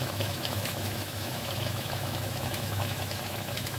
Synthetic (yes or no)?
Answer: yes